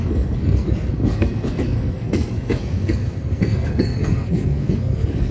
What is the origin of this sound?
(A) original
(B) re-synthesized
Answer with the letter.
B